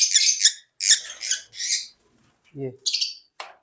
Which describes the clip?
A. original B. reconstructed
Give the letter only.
A